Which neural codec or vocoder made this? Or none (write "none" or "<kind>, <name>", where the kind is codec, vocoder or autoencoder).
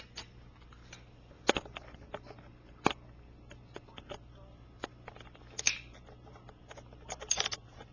none